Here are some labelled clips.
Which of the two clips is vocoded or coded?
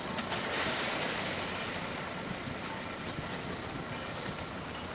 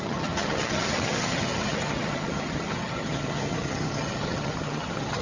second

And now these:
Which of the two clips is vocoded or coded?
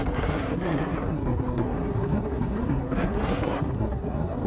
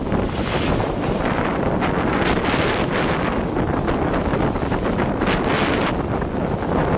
first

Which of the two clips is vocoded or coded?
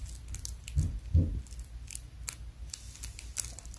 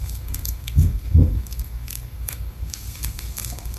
second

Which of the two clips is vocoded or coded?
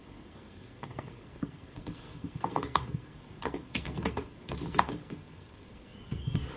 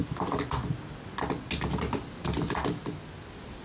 first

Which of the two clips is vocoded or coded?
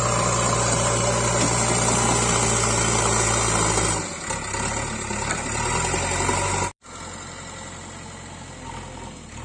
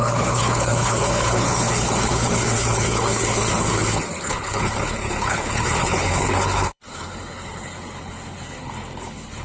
second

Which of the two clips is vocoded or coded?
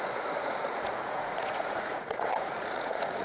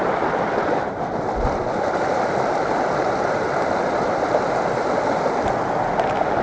first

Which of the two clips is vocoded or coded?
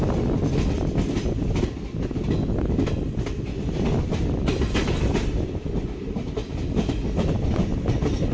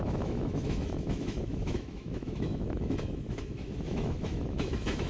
second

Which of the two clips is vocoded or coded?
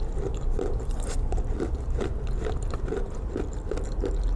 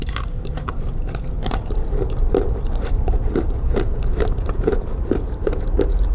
second